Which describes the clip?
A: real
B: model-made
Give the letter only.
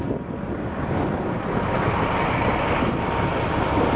A